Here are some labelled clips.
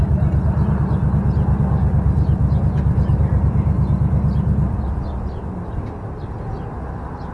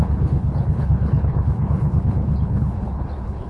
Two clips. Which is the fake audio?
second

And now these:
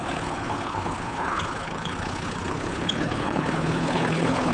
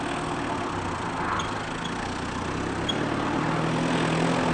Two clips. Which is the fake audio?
first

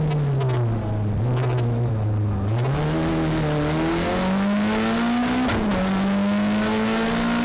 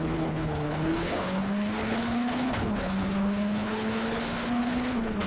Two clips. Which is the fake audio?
second